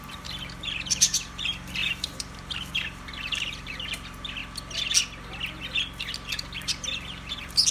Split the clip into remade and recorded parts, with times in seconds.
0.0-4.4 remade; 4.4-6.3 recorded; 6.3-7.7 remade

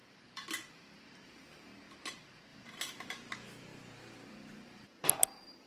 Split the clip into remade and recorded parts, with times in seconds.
0.0-0.9 remade; 0.9-2.5 recorded; 2.5-3.1 remade; 3.1-3.7 recorded; 3.7-5.7 remade